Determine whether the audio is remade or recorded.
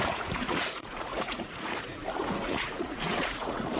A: remade